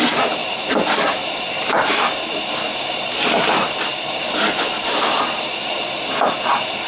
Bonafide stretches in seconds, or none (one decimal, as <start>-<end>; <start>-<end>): none